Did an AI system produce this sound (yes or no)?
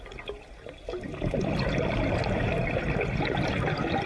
no